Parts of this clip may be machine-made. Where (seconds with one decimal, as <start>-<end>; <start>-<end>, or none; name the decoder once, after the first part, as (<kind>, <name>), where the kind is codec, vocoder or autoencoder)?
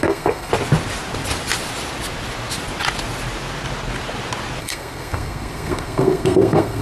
0.0-0.5 (codec, SNAC); 4.6-6.8